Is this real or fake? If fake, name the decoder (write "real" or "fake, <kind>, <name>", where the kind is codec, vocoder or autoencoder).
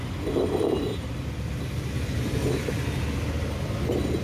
real